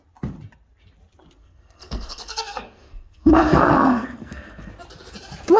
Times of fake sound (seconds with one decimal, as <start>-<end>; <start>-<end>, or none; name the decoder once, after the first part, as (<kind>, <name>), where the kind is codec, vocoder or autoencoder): 1.4-4.7 (codec, SNAC)